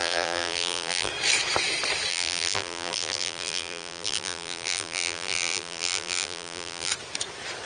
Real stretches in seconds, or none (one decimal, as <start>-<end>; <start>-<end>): 1.1-2.1; 6.9-7.7